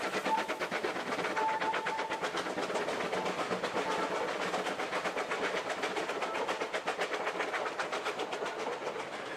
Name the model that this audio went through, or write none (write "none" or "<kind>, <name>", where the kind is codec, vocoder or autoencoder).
none